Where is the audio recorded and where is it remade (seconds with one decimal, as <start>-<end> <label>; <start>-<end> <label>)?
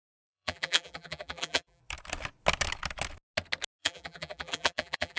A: 0.0-1.8 remade; 1.8-3.8 recorded; 3.8-5.2 remade